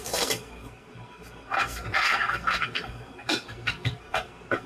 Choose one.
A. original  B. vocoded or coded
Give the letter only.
B